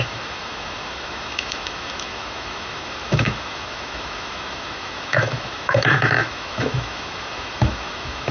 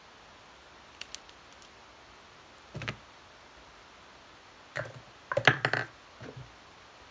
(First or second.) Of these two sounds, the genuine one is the second